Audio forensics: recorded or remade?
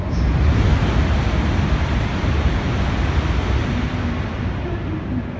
recorded